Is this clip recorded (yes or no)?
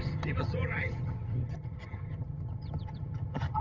no